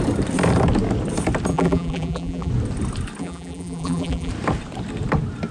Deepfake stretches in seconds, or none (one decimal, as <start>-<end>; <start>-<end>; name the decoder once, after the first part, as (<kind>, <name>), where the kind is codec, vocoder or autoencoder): 1.5-2.5 (vocoder, BigVGAN v2); 3.2-4.3

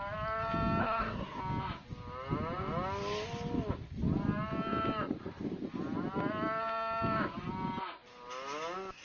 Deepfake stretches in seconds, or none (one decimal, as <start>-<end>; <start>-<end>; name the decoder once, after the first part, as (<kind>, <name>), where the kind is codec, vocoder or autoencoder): 0.8-1.4 (codec, SNAC)

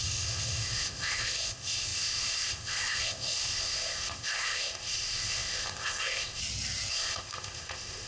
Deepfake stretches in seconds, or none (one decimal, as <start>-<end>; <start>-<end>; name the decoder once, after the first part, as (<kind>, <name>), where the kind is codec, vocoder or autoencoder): 0.0-6.4 (codec, ZipCodec); 6.9-8.1

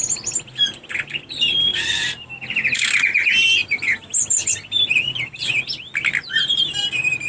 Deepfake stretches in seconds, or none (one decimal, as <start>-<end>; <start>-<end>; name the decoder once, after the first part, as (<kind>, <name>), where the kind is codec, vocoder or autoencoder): 1.7-2.3 (vocoder, BigVGAN v2); 3.6-7.3

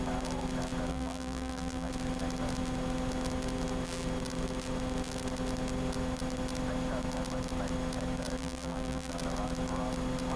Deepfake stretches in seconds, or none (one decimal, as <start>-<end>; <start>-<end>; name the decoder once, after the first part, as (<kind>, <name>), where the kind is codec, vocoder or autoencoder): 0.9-1.9 (vocoder, BigVGAN v2); 8.4-9.1